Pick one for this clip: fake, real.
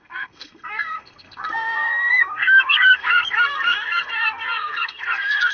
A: fake